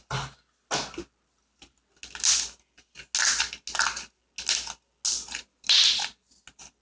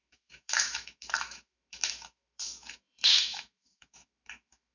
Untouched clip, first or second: first